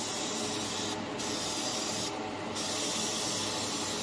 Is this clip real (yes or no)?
yes